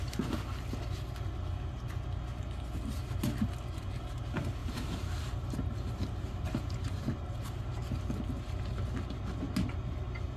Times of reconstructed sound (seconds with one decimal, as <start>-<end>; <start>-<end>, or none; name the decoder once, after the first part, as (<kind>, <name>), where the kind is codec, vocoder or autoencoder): 4.6-8.0 (vocoder, BigVGAN v2)